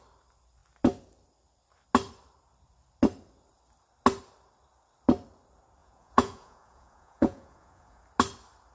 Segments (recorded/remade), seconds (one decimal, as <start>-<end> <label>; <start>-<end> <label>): 0.0-5.8 recorded; 5.8-8.0 remade; 8.0-8.7 recorded